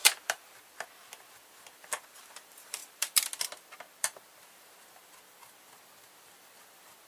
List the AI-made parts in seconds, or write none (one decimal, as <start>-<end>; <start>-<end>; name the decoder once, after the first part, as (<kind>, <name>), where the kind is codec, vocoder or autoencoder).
0.0-7.1 (vocoder, BigVGAN v2)